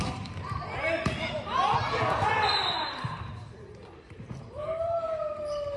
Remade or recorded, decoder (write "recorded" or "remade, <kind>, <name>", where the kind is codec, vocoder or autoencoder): remade, vocoder, BigVGAN v2